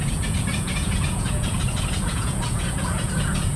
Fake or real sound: fake